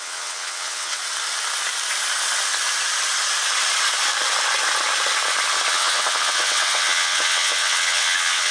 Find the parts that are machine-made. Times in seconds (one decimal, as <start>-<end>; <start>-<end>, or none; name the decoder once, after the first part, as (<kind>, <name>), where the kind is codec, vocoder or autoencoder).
0.0-1.0 (vocoder, WaveNeXt); 5.7-8.5